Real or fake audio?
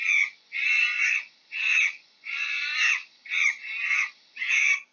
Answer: fake